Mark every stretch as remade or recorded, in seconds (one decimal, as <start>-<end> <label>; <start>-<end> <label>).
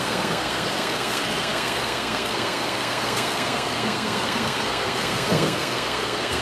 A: 0.0-6.4 remade